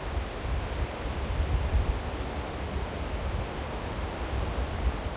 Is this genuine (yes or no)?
yes